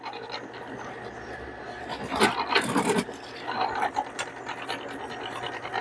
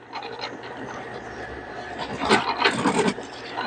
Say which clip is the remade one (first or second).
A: second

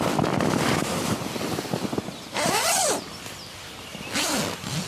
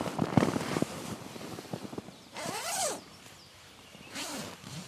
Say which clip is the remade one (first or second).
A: second